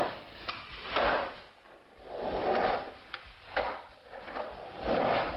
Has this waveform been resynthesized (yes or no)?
no